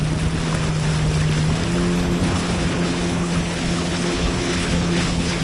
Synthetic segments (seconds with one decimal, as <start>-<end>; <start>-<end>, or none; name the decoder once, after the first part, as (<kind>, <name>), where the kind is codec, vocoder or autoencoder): 2.2-5.4 (codec, HILCodec)

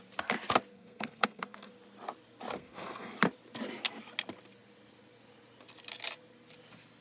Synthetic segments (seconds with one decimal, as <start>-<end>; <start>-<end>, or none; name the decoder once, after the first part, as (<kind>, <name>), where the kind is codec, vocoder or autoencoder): 0.7-1.7 (codec, SNAC); 2.6-3.1